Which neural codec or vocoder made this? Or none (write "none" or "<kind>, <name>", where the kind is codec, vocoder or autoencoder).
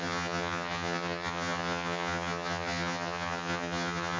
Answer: vocoder, HiFi-GAN